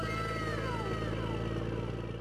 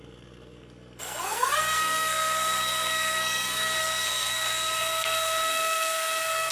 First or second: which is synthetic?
second